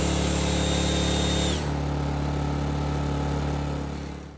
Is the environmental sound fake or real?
real